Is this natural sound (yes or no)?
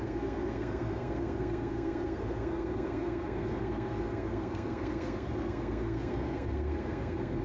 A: no